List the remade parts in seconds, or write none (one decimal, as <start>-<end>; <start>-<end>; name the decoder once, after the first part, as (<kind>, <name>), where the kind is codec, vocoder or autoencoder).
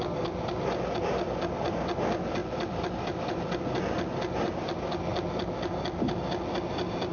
2.4-3.2 (vocoder, BigVGAN v2)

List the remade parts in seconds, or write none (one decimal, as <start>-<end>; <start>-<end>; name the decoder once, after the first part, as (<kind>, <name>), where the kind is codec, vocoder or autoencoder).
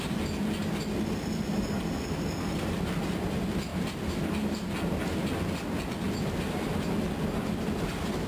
3.7-4.7 (vocoder, BigVGAN v2)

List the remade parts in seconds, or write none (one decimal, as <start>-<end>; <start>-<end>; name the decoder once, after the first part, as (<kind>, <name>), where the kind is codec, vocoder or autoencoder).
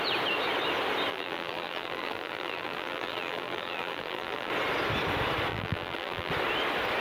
1.1-4.5 (vocoder, BigVGAN v2); 5.5-6.3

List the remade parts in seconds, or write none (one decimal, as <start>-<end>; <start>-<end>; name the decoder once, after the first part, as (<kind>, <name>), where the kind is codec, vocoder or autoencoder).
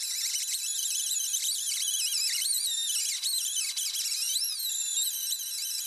0.0-3.0 (vocoder, BigVGAN v2); 4.8-5.9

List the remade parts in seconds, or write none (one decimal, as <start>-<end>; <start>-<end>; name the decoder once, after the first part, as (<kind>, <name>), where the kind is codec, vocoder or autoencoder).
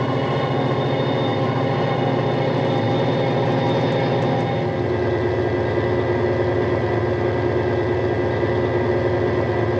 none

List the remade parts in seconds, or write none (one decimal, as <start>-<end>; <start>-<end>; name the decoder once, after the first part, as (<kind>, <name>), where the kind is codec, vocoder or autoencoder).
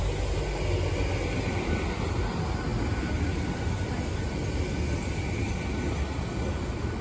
none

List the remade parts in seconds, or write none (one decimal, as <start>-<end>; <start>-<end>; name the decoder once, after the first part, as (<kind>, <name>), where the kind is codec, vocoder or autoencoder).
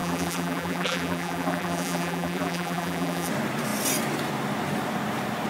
0.0-3.3 (vocoder, BigVGAN v2)